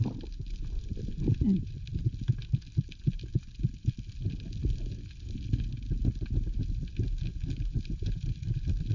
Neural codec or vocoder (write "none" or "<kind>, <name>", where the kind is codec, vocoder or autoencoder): none